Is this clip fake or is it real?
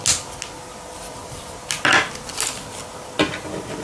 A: real